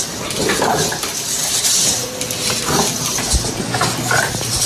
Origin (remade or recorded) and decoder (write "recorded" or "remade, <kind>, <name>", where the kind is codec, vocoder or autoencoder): recorded